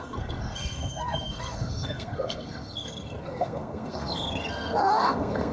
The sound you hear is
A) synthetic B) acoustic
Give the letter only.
A